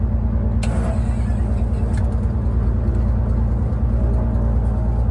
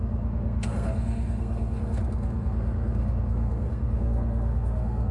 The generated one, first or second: second